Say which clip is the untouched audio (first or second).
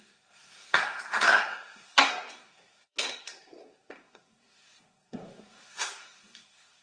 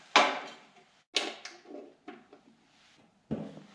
second